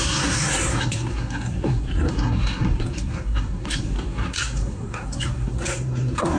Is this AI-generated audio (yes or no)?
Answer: yes